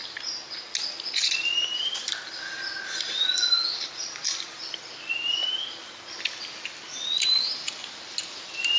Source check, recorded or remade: recorded